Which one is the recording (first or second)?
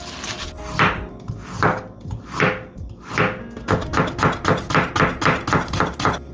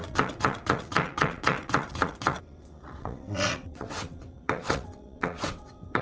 first